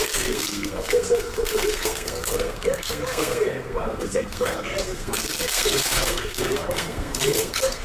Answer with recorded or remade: remade